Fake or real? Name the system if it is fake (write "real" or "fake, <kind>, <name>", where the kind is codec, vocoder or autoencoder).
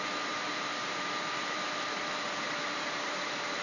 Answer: fake, vocoder, BigVGAN v2